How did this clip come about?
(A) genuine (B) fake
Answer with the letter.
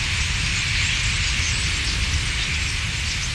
A